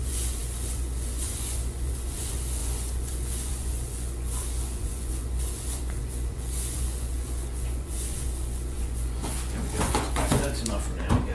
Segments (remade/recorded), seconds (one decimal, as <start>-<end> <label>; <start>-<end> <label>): 0.0-11.3 remade